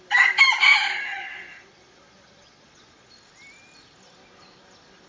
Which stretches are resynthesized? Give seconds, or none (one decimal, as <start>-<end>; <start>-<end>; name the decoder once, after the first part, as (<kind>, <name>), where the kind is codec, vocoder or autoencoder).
1.1-3.1 (vocoder, Vocos)